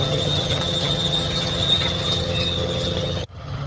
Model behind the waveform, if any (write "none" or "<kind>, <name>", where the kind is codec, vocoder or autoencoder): vocoder, HiFi-GAN